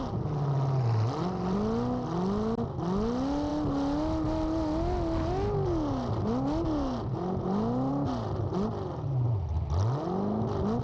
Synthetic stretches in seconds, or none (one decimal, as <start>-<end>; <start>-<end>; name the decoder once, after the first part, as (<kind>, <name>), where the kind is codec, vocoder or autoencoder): none